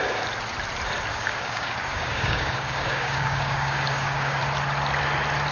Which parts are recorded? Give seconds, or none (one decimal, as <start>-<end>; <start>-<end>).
0.0-1.1; 4.4-5.5